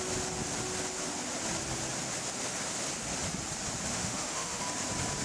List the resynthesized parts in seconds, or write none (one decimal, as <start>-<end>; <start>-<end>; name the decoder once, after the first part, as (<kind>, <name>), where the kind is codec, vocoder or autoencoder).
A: 3.9-4.6 (autoencoder, DAC-VAE)